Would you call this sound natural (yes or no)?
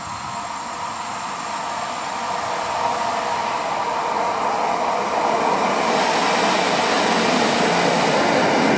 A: yes